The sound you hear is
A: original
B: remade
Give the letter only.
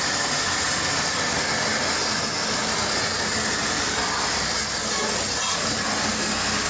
A